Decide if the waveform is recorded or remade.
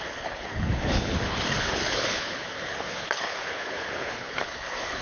remade